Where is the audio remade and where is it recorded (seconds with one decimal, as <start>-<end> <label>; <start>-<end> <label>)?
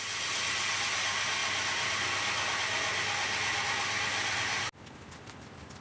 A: 0.0-5.8 recorded